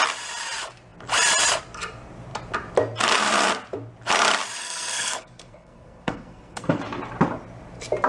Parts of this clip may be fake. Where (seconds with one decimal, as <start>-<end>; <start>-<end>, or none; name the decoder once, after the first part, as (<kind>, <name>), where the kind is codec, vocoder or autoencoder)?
4.6-6.8 (codec, SNAC)

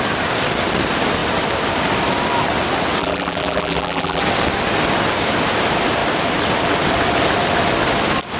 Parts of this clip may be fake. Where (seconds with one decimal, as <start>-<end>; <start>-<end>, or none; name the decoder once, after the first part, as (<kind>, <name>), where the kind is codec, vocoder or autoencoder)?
3.0-4.2 (vocoder, BigVGAN v2)

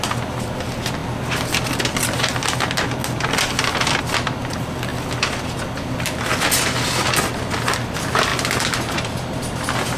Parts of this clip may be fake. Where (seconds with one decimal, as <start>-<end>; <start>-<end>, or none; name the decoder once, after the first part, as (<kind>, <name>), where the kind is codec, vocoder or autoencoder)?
none

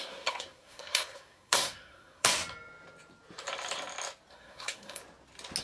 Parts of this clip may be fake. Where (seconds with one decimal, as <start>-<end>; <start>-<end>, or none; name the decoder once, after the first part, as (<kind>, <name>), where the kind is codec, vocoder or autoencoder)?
0.0-2.3 (codec, SNAC); 4.3-5.0

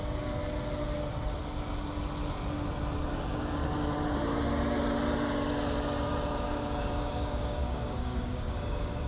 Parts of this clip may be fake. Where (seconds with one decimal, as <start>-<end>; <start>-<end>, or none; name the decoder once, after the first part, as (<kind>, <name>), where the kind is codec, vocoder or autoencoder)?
0.0-0.4 (codec, DAC); 3.1-3.6; 6.6-9.1